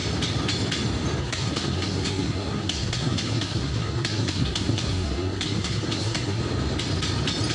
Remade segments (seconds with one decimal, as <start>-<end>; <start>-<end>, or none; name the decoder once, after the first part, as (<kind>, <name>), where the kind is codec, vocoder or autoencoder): 1.2-6.4 (codec, SNAC)